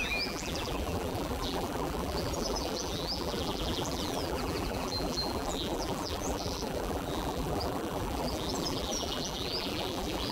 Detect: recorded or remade remade